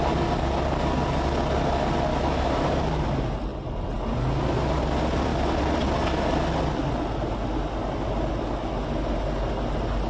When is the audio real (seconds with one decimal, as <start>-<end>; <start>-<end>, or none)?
0.0-2.1; 2.8-10.1